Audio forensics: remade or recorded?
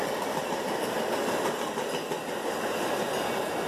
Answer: recorded